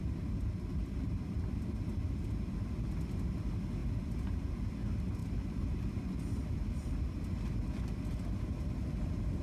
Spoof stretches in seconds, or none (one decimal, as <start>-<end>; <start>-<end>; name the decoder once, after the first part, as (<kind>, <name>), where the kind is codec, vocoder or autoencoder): none